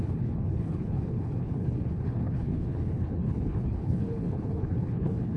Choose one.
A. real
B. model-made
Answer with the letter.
B